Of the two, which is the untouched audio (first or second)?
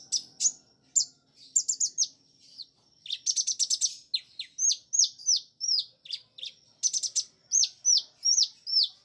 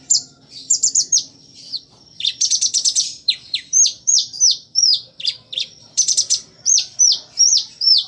first